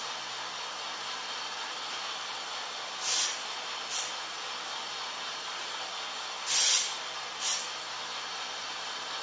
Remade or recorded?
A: recorded